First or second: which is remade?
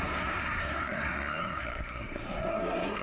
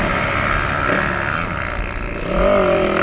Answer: first